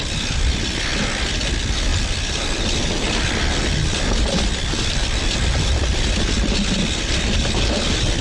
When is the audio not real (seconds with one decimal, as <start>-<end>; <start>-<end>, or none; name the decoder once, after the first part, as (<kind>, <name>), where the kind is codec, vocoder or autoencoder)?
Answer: 0.9-1.5 (vocoder, BigVGAN v2); 1.9-6.2